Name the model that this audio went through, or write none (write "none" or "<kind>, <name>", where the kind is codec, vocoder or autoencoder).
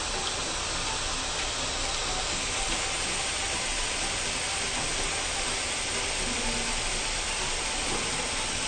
none